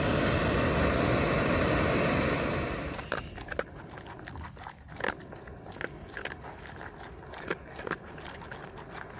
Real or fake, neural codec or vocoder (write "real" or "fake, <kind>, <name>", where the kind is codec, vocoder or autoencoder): real